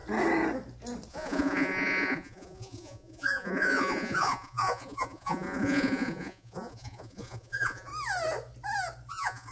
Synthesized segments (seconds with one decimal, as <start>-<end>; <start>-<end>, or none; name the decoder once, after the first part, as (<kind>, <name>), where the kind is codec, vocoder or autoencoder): 1.1-7.9 (vocoder, Vocos); 9.1-9.5